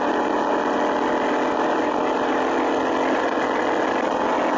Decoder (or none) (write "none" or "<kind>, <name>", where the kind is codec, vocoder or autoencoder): none